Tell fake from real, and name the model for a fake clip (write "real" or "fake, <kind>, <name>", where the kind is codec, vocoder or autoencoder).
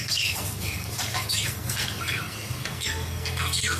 fake, codec, SNAC